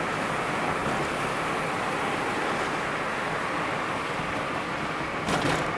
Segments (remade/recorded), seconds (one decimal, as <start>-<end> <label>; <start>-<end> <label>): 0.0-5.8 recorded